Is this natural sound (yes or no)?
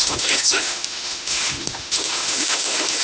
no